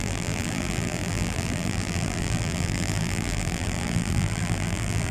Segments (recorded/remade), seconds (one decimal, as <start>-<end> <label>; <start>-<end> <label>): 0.0-5.1 remade